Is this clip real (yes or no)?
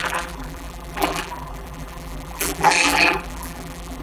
no